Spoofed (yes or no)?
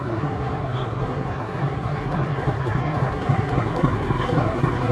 yes